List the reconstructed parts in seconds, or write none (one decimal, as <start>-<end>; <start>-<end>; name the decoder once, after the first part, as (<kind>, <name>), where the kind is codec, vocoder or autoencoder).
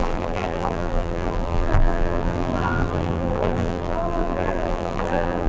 0.0-5.5 (vocoder, BigVGAN v2)